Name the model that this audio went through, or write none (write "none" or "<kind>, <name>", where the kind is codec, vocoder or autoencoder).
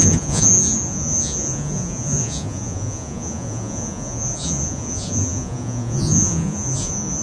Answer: vocoder, Vocos